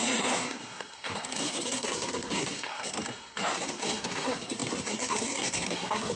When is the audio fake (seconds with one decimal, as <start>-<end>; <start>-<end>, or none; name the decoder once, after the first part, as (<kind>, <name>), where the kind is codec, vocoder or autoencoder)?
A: 0.0-6.2 (codec, SNAC)